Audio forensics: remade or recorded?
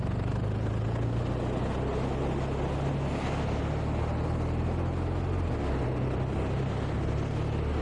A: recorded